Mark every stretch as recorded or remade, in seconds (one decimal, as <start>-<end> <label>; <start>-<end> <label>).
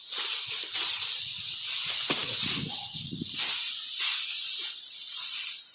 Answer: 0.0-5.7 recorded